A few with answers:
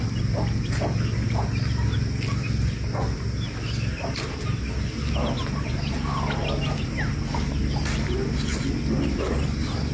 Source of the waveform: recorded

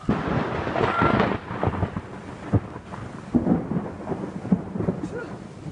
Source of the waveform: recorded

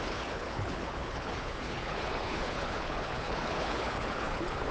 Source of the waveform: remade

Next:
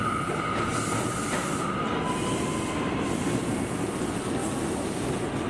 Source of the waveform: recorded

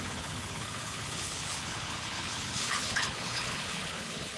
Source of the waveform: remade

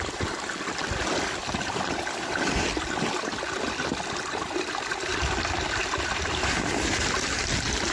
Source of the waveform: recorded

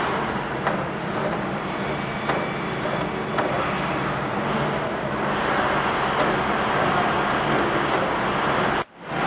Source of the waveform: recorded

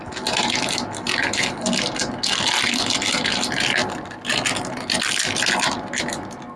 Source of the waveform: recorded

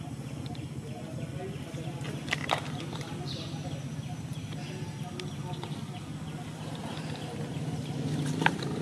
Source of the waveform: recorded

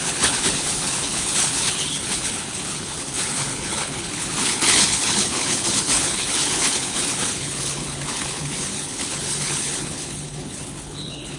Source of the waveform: remade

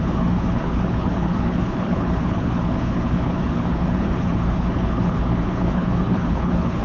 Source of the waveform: remade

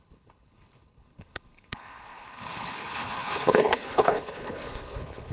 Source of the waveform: remade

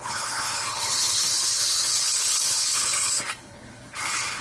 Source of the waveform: remade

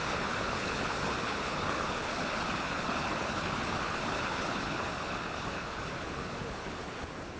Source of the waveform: remade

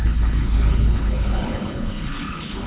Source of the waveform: remade